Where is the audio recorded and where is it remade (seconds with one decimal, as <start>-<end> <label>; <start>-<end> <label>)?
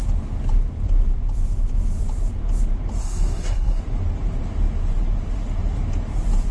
0.0-3.0 recorded; 3.0-3.8 remade; 3.8-6.5 recorded